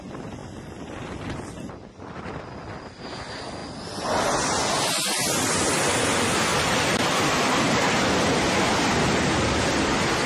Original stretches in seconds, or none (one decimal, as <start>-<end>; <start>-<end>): 0.0-0.4; 2.9-6.5; 8.0-10.3